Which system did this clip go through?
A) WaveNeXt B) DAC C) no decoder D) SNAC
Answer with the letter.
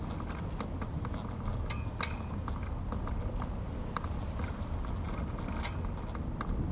C